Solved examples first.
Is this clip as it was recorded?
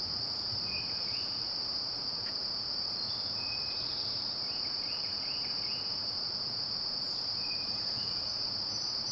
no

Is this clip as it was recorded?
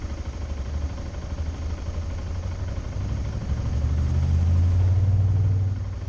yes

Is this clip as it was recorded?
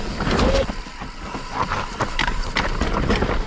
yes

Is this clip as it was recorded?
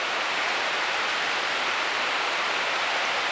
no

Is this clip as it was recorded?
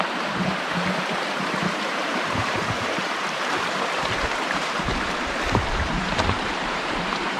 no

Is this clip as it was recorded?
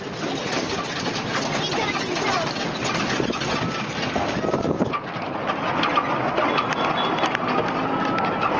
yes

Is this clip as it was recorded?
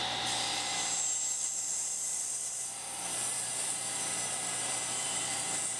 no